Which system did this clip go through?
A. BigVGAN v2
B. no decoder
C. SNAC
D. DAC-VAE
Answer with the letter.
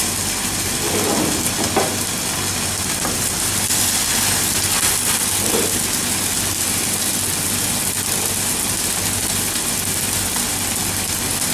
B